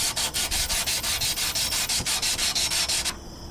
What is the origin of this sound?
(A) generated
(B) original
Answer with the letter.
B